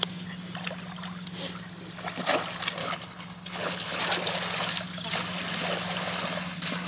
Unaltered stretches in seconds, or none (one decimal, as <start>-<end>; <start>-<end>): 0.0-2.8; 4.0-6.9